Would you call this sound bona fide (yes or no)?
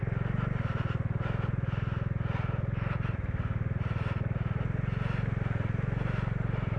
yes